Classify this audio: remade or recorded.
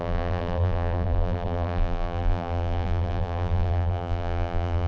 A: remade